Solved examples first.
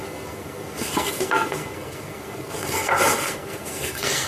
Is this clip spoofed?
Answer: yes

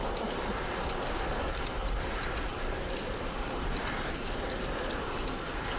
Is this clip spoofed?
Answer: no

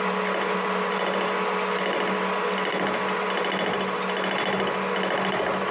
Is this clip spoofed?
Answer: no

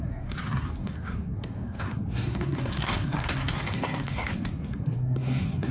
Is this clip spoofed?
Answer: yes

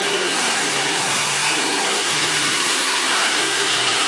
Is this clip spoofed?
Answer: yes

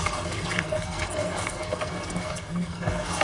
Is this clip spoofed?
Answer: yes